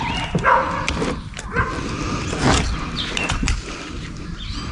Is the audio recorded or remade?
recorded